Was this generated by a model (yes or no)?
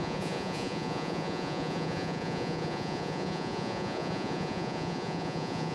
yes